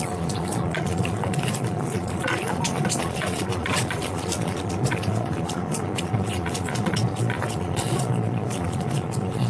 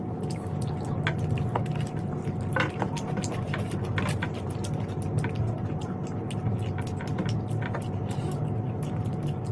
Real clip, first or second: second